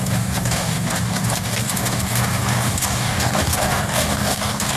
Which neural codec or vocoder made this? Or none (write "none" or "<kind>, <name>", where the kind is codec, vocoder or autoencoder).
codec, DAC